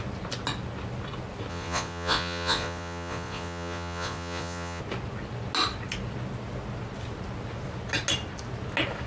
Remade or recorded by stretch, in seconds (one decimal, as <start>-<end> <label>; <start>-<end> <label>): 0.0-1.5 recorded; 1.5-4.8 remade; 4.8-9.1 recorded